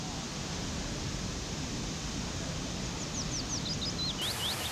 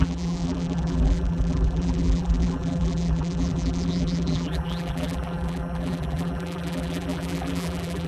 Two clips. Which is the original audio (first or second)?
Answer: first